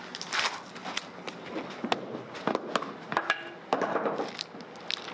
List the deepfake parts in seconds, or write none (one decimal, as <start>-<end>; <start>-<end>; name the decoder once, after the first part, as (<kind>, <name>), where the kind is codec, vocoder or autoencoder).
none